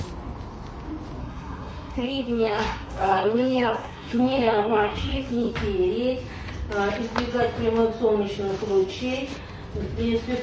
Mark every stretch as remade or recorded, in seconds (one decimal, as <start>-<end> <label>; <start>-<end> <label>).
0.0-1.2 recorded; 1.2-5.5 remade; 5.5-10.4 recorded